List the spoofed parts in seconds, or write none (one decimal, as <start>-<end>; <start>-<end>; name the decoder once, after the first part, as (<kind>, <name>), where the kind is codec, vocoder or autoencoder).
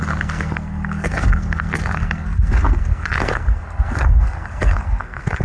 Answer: 0.0-5.4 (codec, SNAC)